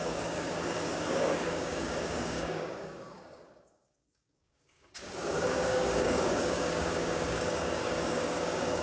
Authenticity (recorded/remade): remade